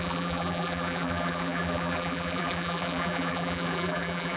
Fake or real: fake